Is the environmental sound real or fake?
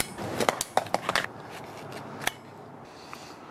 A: real